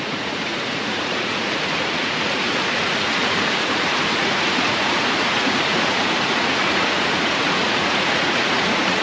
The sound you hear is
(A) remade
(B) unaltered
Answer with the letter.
A